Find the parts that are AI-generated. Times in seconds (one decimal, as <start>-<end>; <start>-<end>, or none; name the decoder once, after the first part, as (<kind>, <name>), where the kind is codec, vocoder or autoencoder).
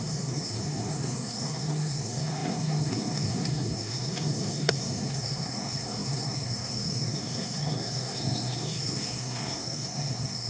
0.0-10.5 (codec, SNAC)